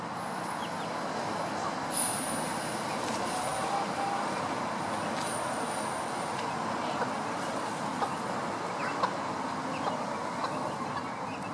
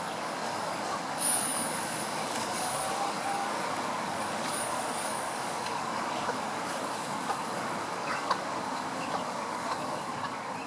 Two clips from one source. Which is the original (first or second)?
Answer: first